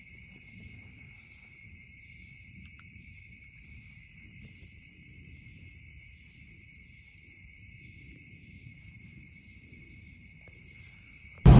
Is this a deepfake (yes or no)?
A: yes